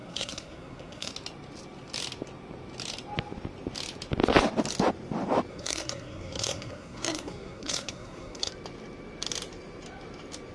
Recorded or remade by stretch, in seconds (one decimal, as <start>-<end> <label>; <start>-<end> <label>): 0.0-1.1 remade; 1.1-5.5 recorded; 5.5-8.5 remade; 8.5-10.5 recorded